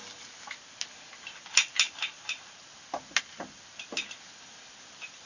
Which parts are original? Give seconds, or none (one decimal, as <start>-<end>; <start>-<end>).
0.0-5.3